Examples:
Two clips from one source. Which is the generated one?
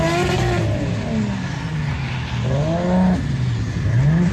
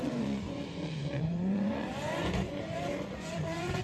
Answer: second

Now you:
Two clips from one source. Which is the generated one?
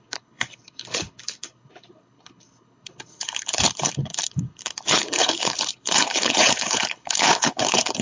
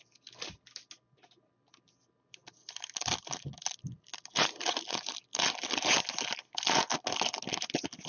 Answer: first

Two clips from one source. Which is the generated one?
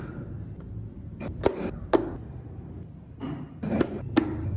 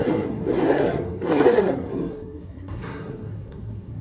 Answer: second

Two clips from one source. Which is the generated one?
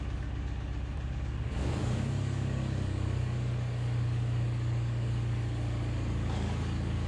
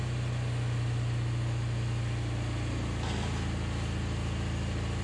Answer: first